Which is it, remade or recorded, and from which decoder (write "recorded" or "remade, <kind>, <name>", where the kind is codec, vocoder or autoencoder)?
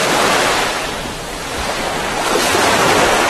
remade, vocoder, BigVGAN v2